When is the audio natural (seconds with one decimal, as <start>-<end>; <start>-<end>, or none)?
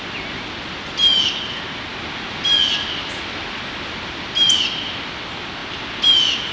0.0-6.5